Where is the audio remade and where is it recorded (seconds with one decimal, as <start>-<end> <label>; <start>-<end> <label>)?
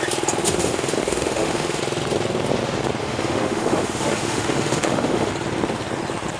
0.0-0.4 recorded; 0.4-1.8 remade; 1.8-3.0 recorded; 3.0-5.3 remade; 5.3-6.4 recorded